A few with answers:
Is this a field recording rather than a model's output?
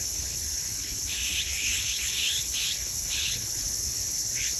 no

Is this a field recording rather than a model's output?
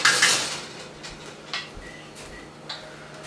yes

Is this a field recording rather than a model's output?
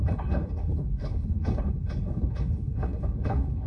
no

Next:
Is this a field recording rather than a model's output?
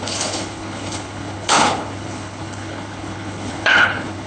no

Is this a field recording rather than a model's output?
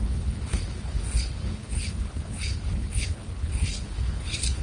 no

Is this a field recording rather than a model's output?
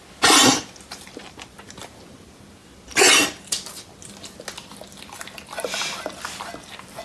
yes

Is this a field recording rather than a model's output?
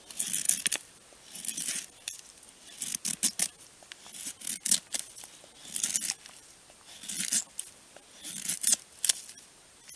yes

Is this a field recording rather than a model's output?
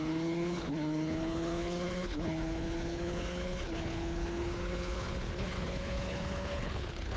no